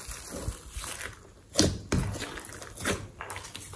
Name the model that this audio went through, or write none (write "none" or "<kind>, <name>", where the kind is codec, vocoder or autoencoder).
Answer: none